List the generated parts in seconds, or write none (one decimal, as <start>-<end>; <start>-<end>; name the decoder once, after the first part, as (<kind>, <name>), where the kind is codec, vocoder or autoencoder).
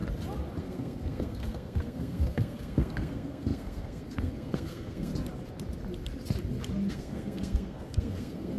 0.6-5.1 (codec, SNAC); 6.9-8.6